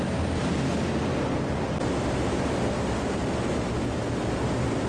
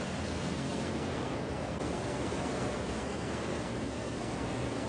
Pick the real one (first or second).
first